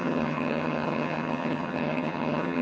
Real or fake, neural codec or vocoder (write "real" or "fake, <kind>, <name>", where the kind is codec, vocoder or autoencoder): fake, vocoder, HiFi-GAN